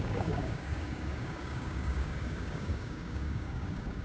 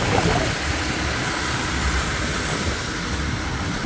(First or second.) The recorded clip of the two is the second